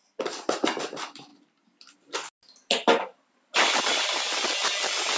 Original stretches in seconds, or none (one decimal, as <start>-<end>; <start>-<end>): 0.0-5.2